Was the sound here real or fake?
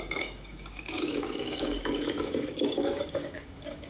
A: fake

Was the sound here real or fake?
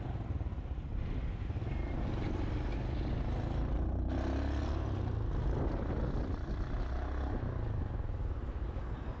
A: real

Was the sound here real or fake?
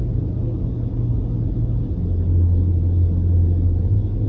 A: real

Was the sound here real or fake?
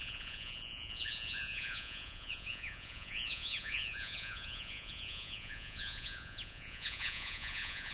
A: fake